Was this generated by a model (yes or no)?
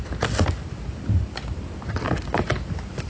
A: no